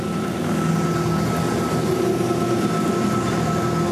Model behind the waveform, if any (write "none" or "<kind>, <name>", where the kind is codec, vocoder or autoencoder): none